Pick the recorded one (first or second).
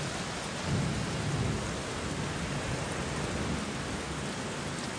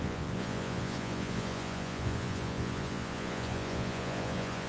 first